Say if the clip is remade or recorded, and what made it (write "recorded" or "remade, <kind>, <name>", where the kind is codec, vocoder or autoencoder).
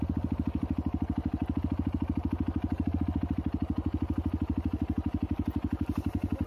recorded